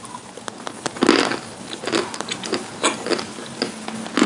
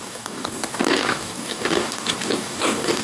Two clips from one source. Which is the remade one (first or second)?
second